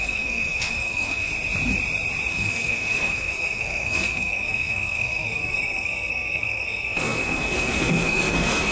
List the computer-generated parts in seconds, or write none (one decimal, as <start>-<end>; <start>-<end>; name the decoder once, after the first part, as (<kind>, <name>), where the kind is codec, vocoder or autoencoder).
0.0-1.3 (codec, SNAC); 2.3-8.7